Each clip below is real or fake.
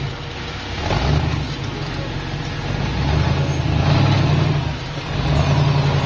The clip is real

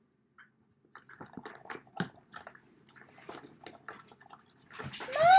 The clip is real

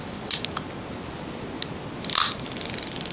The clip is real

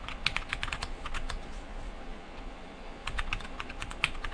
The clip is fake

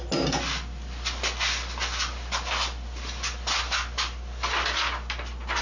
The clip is real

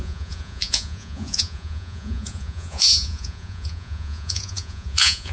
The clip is fake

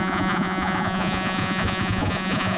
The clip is fake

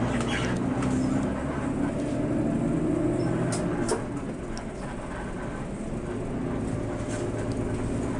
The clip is real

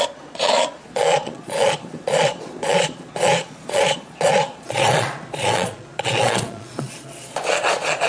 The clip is fake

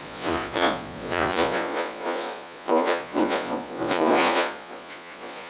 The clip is fake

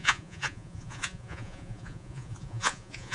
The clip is fake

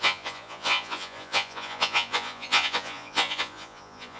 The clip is fake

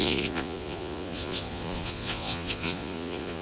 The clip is fake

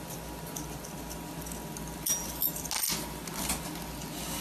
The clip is real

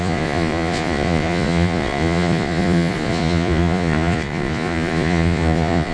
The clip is fake